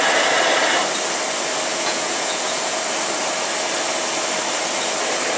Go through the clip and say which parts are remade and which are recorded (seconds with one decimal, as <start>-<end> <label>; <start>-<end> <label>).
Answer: 0.0-1.7 recorded; 1.7-2.8 remade; 2.8-5.4 recorded